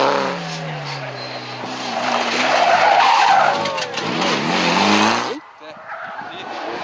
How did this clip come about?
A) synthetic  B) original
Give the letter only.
B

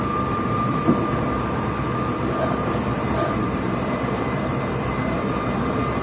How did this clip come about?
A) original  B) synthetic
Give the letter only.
B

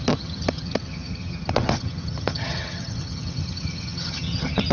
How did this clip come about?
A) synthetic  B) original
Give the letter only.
A